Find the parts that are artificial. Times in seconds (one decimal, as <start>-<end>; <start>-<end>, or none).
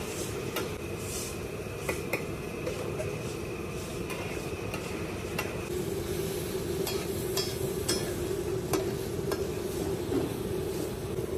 none